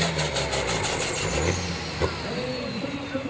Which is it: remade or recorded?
recorded